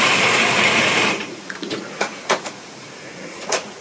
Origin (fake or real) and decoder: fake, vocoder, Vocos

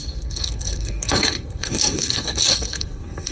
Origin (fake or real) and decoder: fake, codec, SNAC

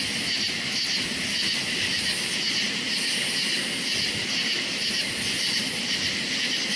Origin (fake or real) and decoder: real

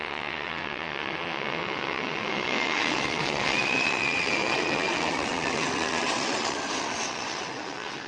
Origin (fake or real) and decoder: fake, vocoder, WaveNeXt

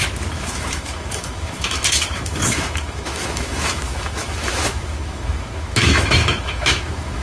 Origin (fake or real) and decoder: fake, autoencoder, DAC-VAE